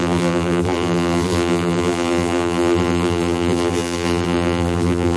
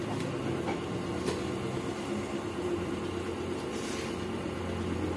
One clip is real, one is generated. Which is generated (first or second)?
first